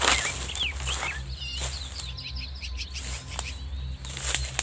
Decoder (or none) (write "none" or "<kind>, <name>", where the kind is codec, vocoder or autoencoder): none